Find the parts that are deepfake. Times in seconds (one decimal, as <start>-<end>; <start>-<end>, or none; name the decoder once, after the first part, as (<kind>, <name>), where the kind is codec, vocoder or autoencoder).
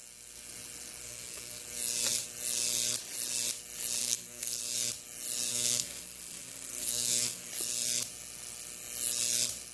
1.0-1.6 (codec, SNAC); 4.0-4.6; 5.5-7.5